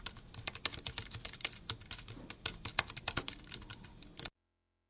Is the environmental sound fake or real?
real